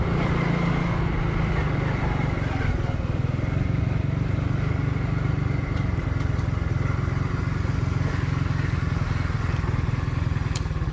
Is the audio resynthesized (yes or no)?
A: no